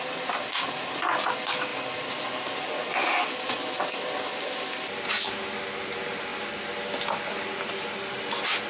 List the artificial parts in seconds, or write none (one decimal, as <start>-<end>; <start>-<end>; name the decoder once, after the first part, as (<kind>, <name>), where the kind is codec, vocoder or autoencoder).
none